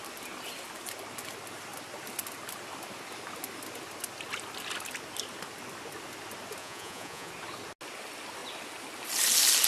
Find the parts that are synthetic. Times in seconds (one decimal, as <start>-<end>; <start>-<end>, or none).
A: 6.6-7.3